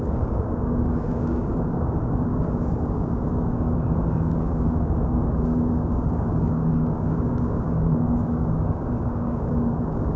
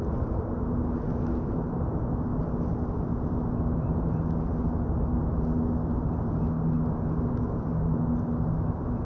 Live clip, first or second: second